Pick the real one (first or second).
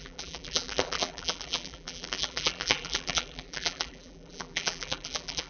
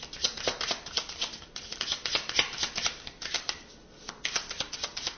second